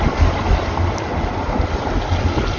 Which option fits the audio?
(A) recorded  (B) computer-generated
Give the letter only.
A